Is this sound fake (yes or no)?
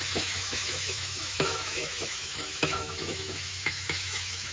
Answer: yes